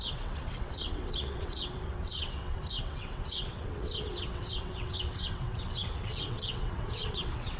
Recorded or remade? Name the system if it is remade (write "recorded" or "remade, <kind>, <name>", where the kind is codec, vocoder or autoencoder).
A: remade, vocoder, WaveNeXt